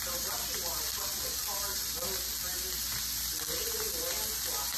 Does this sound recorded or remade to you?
recorded